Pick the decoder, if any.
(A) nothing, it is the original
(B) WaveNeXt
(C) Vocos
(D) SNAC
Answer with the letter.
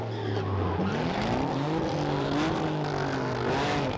A